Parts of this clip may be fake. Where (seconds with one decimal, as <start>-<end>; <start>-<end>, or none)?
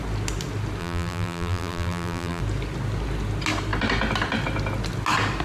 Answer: 0.8-2.4